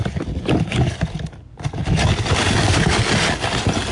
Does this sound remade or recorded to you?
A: recorded